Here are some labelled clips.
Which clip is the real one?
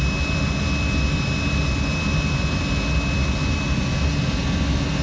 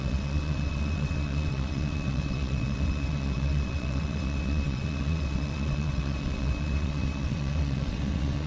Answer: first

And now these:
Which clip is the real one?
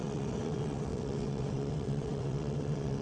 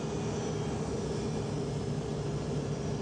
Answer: second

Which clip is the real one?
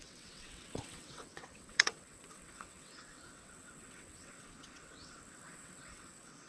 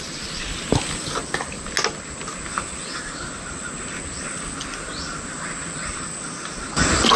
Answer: second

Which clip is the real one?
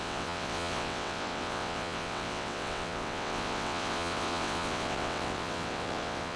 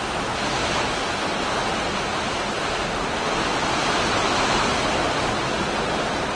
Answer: second